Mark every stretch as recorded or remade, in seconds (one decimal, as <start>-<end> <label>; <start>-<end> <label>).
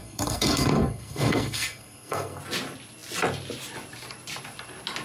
0.0-2.4 remade; 2.4-5.0 recorded